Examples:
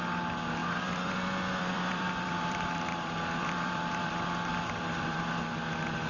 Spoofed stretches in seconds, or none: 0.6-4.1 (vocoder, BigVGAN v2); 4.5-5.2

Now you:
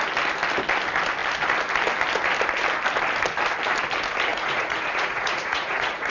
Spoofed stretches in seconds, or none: 4.3-6.1 (vocoder, Vocos)